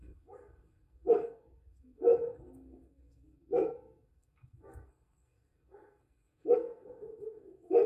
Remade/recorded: remade